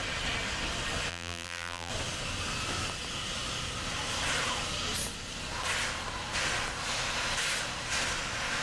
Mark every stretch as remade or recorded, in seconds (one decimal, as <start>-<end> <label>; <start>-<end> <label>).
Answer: 0.0-1.1 recorded; 1.1-1.9 remade; 1.9-8.6 recorded